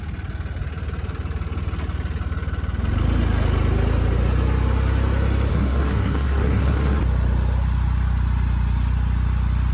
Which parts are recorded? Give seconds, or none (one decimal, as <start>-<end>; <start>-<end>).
0.0-5.5; 7.0-9.7